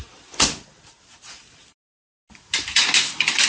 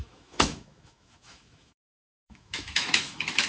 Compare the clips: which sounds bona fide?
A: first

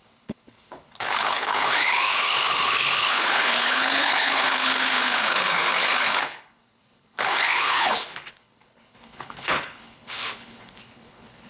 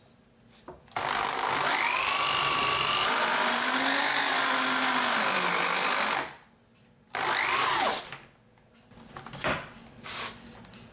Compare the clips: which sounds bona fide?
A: second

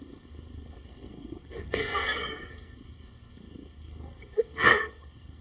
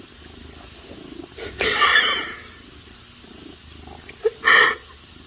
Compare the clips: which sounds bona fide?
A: second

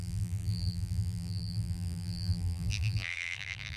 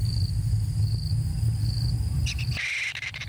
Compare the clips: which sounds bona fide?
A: second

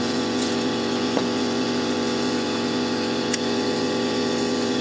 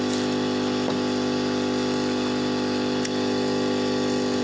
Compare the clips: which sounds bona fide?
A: second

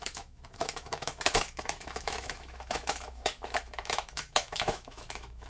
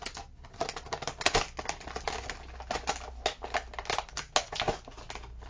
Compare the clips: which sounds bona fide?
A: second